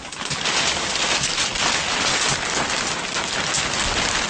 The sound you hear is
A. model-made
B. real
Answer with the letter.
B